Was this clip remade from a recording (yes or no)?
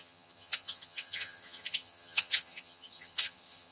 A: yes